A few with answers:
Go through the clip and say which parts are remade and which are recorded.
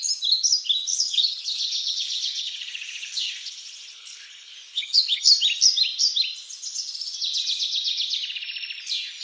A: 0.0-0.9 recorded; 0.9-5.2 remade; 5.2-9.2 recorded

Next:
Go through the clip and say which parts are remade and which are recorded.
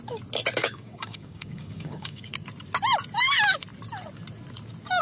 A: 0.0-0.6 recorded; 0.6-2.3 remade; 2.3-5.0 recorded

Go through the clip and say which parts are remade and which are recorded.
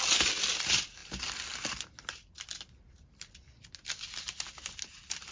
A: 0.0-5.3 recorded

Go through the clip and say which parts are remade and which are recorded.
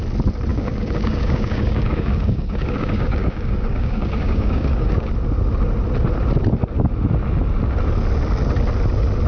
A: 0.0-0.5 recorded; 0.5-5.1 remade; 5.1-9.3 recorded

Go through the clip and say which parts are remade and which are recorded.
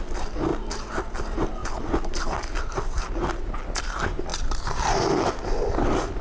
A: 0.0-6.2 recorded